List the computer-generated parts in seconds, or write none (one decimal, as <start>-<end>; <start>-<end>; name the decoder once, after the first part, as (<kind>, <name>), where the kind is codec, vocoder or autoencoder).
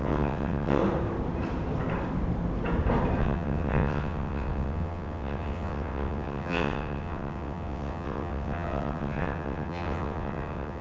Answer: 0.0-0.8 (vocoder, WaveNeXt); 3.2-10.8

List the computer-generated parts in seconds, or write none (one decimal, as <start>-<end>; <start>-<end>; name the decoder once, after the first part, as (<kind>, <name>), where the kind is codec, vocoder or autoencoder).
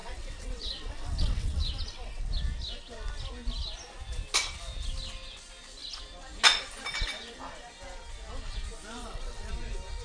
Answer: 0.0-2.2 (vocoder, WaveNeXt); 9.0-9.5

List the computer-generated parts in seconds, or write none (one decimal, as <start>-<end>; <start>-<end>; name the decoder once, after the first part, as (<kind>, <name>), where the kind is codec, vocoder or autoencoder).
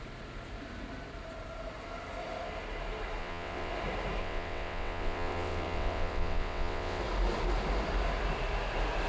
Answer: 3.2-3.7 (vocoder, WaveNeXt); 4.2-7.0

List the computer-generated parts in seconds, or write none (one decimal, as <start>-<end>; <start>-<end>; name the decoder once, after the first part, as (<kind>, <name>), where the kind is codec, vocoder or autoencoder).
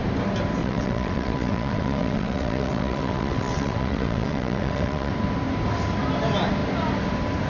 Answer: 0.6-5.1 (vocoder, WaveNeXt)